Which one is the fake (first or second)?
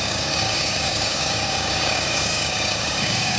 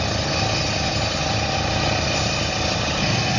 first